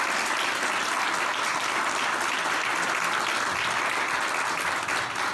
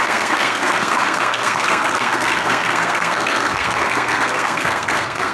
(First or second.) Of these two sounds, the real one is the first